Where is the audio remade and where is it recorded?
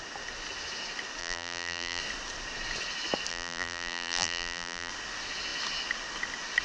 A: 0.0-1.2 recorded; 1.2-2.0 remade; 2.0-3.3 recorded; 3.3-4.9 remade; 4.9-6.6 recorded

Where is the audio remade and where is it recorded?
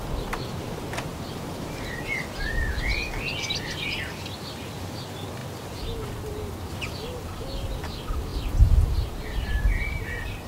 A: 0.0-10.5 recorded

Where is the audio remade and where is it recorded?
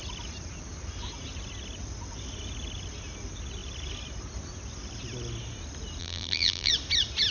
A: 0.0-6.0 recorded; 6.0-6.7 remade; 6.7-7.3 recorded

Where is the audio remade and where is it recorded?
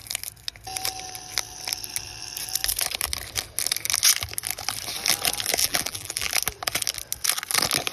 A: 0.0-5.6 recorded; 5.6-6.3 remade; 6.3-7.9 recorded